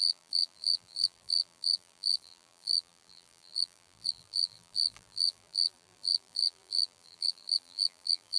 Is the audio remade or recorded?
remade